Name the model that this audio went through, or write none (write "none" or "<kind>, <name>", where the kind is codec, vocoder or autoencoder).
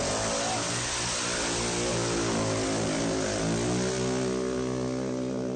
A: none